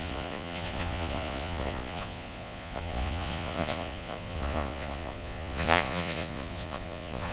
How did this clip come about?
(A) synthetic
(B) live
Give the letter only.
A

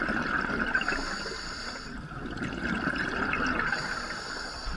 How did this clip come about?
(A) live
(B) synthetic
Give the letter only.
A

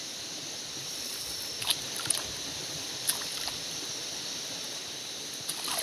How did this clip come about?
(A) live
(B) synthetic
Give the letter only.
A